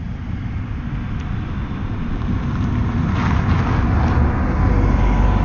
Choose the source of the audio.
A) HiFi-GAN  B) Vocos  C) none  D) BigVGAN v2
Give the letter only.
C